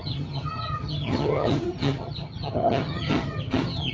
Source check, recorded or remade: remade